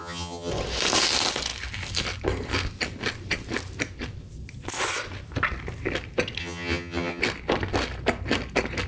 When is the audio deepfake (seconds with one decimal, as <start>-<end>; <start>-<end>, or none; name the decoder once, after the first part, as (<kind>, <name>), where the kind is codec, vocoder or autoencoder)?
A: 0.0-0.5 (vocoder, HiFi-GAN); 6.4-7.2